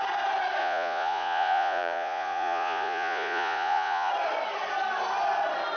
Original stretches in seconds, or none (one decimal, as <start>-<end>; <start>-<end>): 0.0-0.6; 4.1-5.8

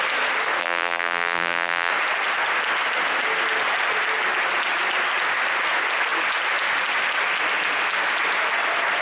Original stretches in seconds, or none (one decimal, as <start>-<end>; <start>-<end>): 0.0-0.6; 1.9-9.0

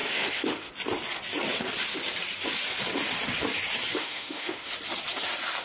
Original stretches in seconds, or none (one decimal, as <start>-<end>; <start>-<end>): 0.7-4.0; 4.7-5.6

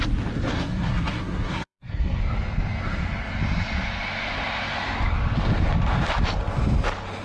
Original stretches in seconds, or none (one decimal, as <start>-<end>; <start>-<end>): 0.0-0.5; 2.2-7.2

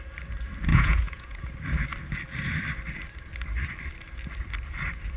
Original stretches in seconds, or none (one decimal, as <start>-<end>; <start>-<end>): 0.0-0.7; 1.4-5.2

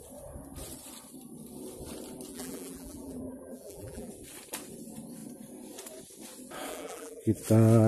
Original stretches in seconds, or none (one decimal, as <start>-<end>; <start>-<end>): 0.0-2.3; 4.1-6.7; 7.2-7.9

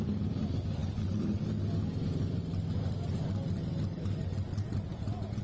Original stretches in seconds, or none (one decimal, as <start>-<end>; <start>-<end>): 0.0-4.9